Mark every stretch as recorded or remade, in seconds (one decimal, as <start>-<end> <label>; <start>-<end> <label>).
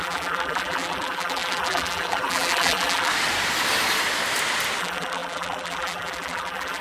0.0-3.1 remade; 3.1-4.8 recorded; 4.8-6.8 remade